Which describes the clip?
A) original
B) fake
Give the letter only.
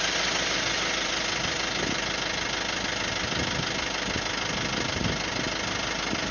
A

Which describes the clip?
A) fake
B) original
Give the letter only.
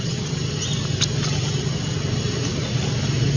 B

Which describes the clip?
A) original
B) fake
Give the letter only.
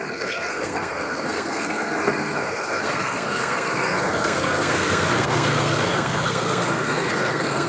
B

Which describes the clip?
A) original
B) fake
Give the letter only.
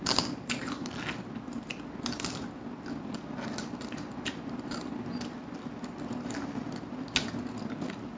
A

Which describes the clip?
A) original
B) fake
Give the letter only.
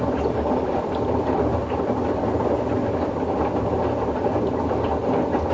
A